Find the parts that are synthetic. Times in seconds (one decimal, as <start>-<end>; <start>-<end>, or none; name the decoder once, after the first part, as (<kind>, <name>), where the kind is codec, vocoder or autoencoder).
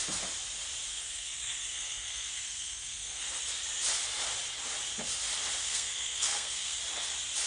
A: 0.9-3.4 (codec, SNAC); 5.6-6.8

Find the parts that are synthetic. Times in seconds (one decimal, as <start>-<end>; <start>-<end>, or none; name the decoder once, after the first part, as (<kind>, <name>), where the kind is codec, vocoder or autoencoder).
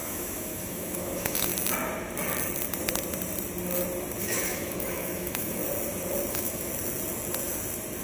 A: 0.0-1.5 (autoencoder, DAC-VAE); 4.2-5.6; 6.3-6.7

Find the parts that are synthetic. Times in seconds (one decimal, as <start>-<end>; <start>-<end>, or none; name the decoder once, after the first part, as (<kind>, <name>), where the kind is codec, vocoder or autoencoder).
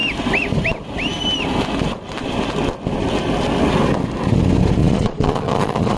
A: 4.8-6.0 (vocoder, Vocos)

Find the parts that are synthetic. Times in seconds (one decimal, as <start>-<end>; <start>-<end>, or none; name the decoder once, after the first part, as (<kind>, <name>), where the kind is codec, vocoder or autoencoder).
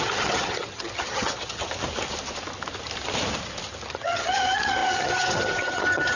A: 0.0-1.6 (vocoder, HiFi-GAN); 3.9-6.2